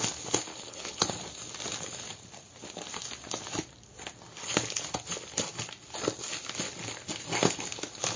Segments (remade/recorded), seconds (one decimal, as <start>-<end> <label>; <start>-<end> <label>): 0.0-0.5 recorded; 0.5-1.1 remade; 1.1-8.2 recorded